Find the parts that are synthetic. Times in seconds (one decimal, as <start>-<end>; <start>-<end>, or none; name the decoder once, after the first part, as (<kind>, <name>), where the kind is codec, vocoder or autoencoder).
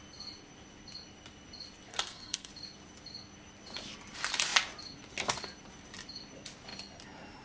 1.9-2.5 (codec, SNAC)